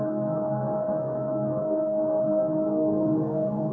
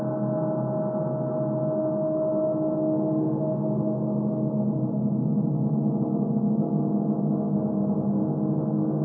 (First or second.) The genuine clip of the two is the second